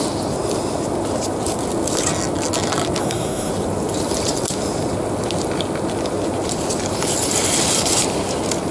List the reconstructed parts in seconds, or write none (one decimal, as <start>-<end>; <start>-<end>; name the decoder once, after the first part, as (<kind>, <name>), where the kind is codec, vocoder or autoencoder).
3.0-3.5 (codec, SNAC)